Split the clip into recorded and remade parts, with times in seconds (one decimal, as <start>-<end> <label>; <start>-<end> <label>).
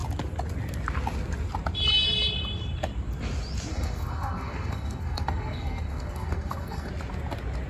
0.0-3.7 recorded; 3.7-6.9 remade; 6.9-7.7 recorded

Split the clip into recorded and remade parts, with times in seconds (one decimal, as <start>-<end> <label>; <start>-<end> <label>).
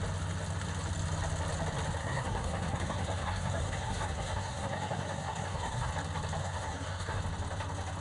0.0-2.0 recorded; 2.0-5.9 remade; 5.9-6.4 recorded; 6.4-7.2 remade; 7.2-8.0 recorded